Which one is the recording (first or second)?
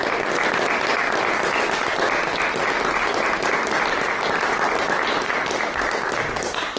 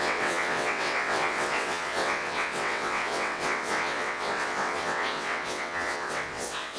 first